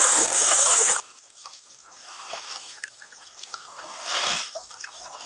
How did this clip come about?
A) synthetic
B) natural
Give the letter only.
A